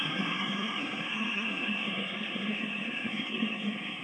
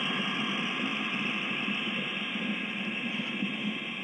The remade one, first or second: first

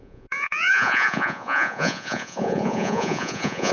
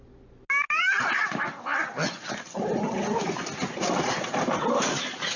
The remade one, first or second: first